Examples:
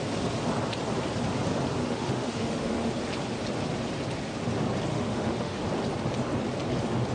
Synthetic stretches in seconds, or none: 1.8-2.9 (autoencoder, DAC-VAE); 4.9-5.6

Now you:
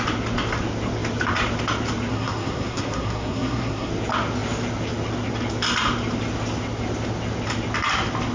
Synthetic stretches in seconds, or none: 2.1-3.9 (codec, SNAC)

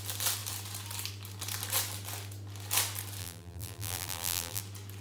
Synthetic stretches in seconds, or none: 3.2-4.6 (vocoder, BigVGAN v2)

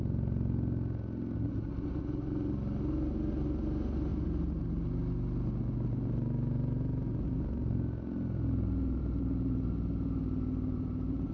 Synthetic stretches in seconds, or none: none

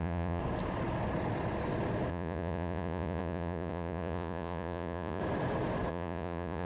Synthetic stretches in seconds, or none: 0.0-0.4 (vocoder, Vocos); 2.1-5.2; 5.9-6.7